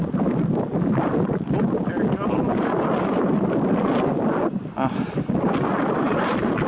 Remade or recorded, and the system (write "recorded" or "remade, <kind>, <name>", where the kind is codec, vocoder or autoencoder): recorded